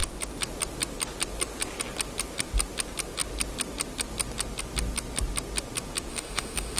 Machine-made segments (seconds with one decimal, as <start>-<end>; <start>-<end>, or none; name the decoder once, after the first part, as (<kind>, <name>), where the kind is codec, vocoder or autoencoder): 6.1-6.8 (autoencoder, DAC-VAE)